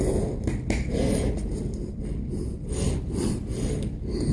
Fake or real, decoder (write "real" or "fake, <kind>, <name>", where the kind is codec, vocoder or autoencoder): real